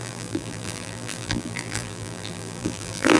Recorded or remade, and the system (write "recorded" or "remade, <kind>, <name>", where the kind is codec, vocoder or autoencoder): remade, vocoder, BigVGAN v2